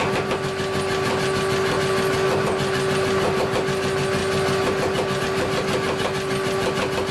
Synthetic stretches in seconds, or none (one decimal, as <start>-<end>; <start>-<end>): none